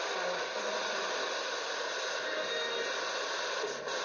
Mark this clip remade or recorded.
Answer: recorded